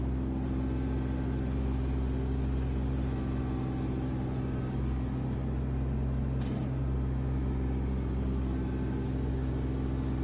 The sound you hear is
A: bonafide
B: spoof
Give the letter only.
A